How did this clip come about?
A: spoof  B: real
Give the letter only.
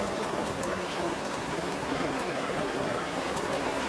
A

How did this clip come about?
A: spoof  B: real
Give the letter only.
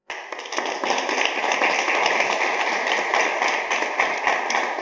B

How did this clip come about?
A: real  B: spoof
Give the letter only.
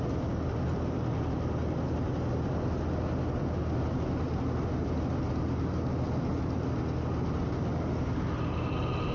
A